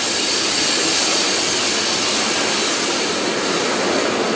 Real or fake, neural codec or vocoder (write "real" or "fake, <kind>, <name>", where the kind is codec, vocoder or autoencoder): real